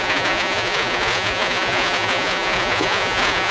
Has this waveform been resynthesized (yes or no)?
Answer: yes